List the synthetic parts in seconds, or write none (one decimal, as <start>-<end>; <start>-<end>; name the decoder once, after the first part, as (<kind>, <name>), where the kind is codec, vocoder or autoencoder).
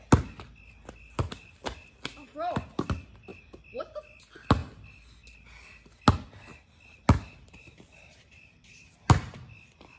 none